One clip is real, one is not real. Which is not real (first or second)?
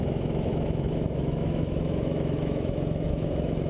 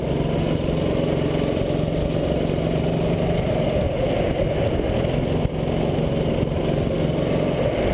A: first